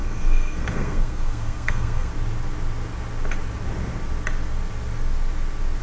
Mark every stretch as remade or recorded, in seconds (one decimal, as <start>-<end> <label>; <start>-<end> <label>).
0.0-2.1 remade; 2.1-5.8 recorded